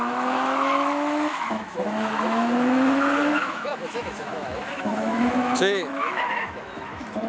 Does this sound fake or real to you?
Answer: fake